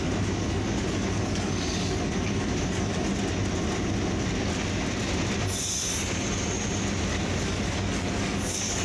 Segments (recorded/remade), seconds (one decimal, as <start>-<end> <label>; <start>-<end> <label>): 0.0-3.1 remade; 3.1-7.1 recorded; 7.1-8.8 remade